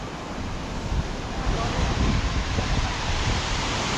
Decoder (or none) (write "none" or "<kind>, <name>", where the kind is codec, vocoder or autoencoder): vocoder, BigVGAN v2